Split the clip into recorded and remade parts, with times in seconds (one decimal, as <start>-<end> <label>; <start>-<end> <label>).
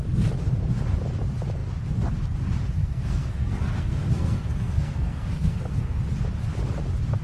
0.0-2.8 recorded; 2.8-6.0 remade; 6.0-7.2 recorded